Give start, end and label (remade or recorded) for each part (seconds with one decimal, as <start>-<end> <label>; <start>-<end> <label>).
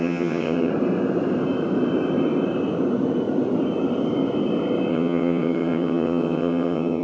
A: 0.0-0.7 remade; 0.7-4.9 recorded; 4.9-7.0 remade